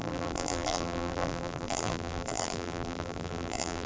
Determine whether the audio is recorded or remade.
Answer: remade